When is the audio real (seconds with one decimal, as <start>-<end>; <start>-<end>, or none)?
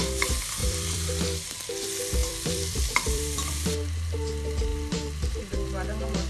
0.0-0.6; 1.2-2.2; 3.5-6.3